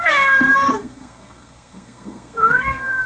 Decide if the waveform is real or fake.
fake